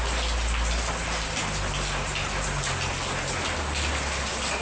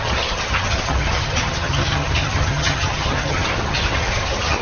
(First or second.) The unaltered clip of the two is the first